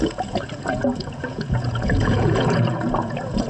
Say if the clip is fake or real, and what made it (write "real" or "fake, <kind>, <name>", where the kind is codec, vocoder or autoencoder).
fake, vocoder, Vocos